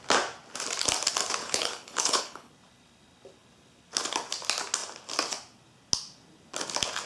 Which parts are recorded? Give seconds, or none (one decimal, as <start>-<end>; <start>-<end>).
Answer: 0.0-1.4; 2.5-7.1